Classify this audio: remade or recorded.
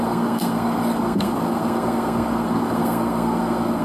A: remade